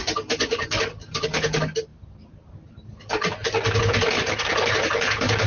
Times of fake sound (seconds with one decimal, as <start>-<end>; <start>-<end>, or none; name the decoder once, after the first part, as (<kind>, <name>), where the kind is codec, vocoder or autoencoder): none